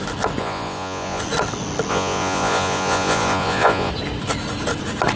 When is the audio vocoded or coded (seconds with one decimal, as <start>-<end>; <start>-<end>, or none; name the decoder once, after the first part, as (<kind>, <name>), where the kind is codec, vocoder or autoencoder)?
0.4-1.2 (vocoder, Vocos); 1.9-3.9